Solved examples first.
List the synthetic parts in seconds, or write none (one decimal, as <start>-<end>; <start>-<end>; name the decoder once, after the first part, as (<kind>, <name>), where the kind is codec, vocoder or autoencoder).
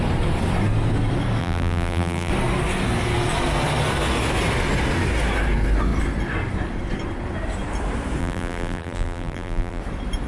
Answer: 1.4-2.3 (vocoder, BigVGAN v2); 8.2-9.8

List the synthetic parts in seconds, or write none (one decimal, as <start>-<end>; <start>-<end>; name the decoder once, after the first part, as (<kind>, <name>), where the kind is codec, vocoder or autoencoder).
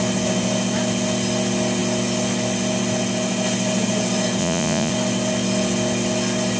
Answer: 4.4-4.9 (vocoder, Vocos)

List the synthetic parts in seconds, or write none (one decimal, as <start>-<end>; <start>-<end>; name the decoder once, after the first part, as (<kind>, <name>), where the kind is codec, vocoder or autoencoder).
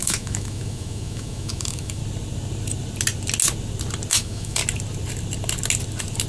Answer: 0.0-2.0 (autoencoder, DAC-VAE); 4.1-4.6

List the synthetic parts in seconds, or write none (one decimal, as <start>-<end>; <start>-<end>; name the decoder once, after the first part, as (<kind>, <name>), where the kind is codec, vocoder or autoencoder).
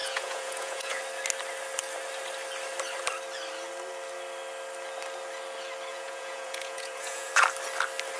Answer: 0.0-1.0 (vocoder, Vocos); 5.9-7.3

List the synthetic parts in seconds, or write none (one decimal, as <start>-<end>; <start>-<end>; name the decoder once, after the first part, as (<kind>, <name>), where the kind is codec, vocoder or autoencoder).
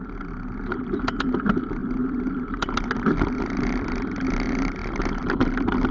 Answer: 1.8-2.9 (vocoder, BigVGAN v2)